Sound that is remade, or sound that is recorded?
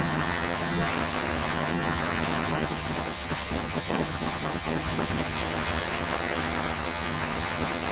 remade